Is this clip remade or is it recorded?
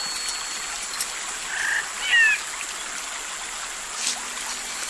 recorded